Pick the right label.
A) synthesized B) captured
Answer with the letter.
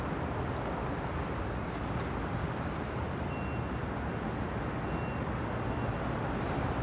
B